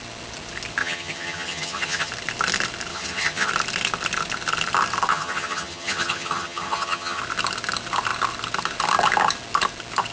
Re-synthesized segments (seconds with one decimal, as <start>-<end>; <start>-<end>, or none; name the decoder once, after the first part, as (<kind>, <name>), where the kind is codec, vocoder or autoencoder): 0.8-2.1 (vocoder, HiFi-GAN); 2.9-3.5; 5.1-7.2